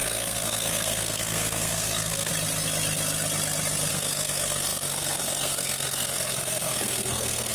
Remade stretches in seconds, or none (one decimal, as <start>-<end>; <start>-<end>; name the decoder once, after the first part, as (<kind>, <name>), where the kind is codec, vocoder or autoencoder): 0.0-2.3 (codec, SNAC); 3.9-7.5